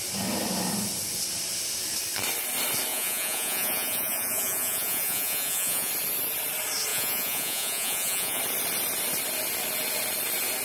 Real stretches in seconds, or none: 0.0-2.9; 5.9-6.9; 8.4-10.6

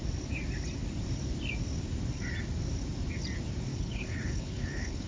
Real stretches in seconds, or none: 0.0-3.7

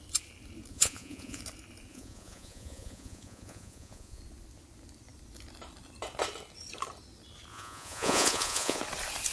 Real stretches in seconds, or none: 0.0-0.7; 1.4-1.9; 4.2-7.5; 8.8-9.3